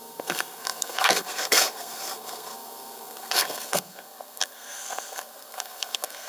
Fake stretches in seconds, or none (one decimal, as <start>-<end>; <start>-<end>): 0.0-6.3